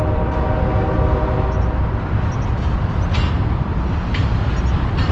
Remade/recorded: recorded